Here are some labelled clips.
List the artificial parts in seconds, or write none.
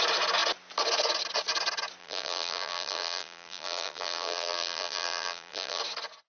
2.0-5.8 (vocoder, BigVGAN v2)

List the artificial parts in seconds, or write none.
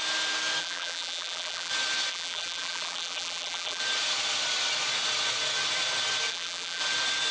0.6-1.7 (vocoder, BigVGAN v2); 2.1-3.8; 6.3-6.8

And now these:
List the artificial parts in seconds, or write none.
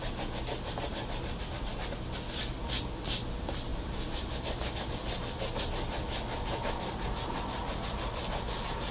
none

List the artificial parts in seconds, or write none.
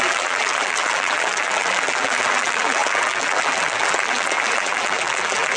0.0-5.6 (vocoder, BigVGAN v2)